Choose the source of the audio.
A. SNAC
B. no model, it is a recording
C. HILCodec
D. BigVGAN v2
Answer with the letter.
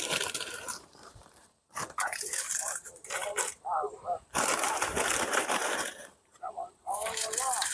D